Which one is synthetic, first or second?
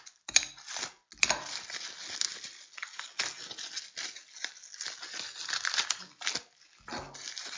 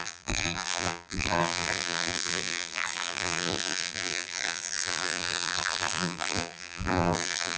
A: second